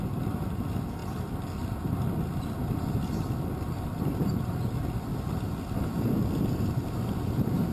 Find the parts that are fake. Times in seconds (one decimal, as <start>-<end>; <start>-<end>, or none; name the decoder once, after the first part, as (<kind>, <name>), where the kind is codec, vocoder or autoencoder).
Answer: none